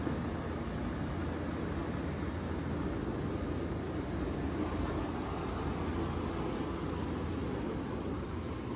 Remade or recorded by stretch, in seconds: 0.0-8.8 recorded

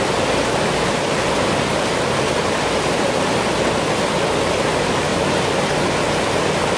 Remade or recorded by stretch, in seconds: 0.0-6.8 recorded